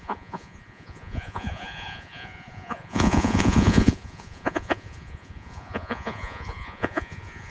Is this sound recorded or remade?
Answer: remade